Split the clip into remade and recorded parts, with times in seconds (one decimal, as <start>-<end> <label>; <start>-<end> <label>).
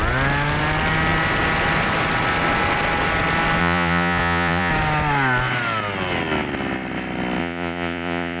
0.0-3.6 recorded; 3.6-4.7 remade; 4.7-7.4 recorded; 7.4-8.4 remade